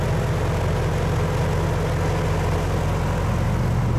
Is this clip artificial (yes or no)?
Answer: no